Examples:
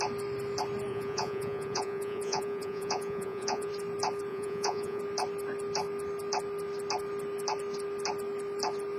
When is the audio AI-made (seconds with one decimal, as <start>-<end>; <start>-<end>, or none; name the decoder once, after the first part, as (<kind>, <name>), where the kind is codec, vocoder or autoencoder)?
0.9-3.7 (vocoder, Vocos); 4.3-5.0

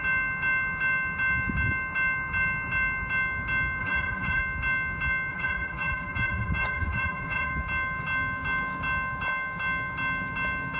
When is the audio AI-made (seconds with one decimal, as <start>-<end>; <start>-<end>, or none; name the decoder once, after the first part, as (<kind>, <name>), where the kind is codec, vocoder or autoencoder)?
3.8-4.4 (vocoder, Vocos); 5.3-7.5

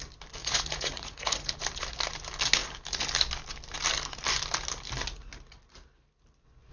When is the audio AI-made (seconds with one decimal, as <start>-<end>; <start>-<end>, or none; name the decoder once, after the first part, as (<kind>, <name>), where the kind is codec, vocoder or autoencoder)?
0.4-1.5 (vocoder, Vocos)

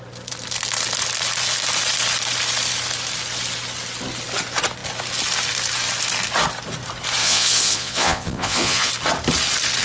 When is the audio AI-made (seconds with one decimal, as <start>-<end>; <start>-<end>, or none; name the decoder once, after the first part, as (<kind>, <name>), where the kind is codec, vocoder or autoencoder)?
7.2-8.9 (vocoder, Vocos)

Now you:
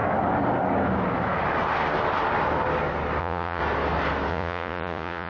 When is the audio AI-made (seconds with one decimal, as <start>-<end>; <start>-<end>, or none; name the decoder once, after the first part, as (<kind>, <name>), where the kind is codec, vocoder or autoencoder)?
3.2-3.6 (vocoder, Vocos); 4.3-5.3

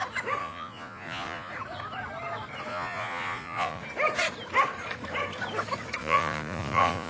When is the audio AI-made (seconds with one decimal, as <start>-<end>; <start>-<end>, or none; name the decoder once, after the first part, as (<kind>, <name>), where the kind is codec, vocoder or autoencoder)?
0.4-1.5 (vocoder, Vocos); 2.7-3.8; 6.0-7.1

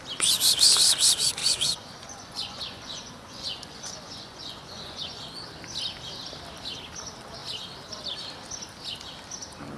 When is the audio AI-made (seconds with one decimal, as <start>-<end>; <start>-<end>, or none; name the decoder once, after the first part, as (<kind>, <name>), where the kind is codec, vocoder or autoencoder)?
1.4-5.4 (vocoder, Vocos)